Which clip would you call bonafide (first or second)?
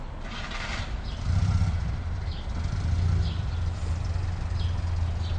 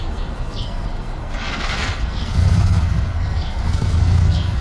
first